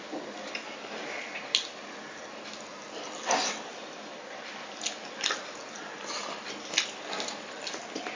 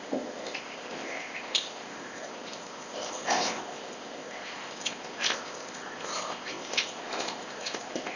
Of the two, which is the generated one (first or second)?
second